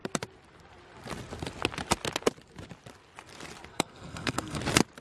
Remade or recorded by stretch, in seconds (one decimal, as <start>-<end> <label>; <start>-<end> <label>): 0.0-3.7 recorded; 3.7-4.6 remade; 4.6-5.0 recorded